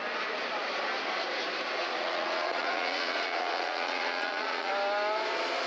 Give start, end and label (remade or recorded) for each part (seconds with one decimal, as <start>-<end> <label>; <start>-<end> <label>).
0.0-1.8 recorded; 1.8-4.7 remade; 4.7-5.7 recorded

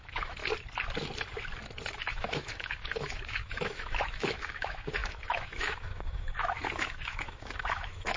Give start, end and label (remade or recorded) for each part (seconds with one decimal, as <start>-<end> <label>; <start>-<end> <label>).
0.0-0.4 remade; 0.4-1.9 recorded; 1.9-8.2 remade

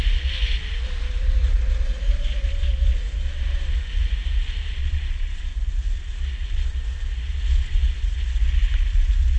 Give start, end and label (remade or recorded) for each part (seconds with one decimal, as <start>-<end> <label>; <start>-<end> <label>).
0.0-4.8 recorded; 4.8-5.4 remade; 5.4-9.4 recorded

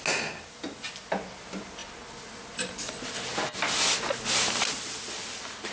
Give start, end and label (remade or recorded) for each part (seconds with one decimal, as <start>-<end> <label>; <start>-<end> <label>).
0.0-5.7 recorded